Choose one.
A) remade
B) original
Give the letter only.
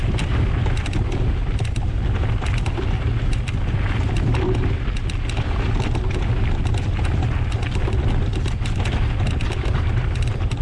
B